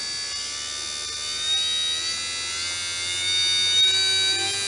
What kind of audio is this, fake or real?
real